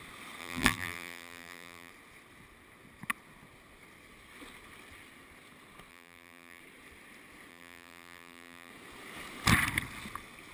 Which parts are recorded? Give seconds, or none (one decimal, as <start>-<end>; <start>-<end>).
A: 0.0-0.4; 1.9-5.9; 6.6-7.5; 8.7-10.5